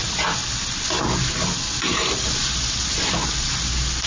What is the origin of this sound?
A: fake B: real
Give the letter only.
B